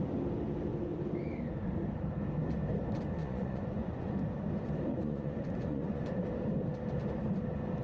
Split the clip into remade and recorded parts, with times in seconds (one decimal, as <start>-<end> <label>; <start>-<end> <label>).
0.0-3.2 recorded; 3.2-4.1 remade; 4.1-4.9 recorded; 4.9-6.0 remade; 6.0-7.8 recorded